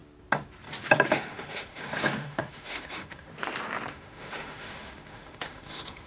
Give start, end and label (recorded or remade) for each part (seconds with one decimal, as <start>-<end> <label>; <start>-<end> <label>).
0.0-1.1 recorded; 1.1-3.3 remade; 3.3-3.9 recorded; 3.9-6.1 remade